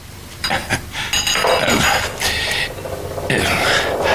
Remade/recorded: recorded